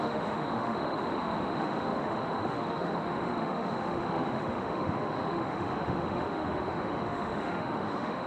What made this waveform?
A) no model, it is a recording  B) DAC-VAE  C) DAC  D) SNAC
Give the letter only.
B